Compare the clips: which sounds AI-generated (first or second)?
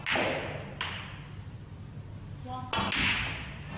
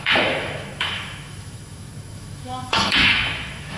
second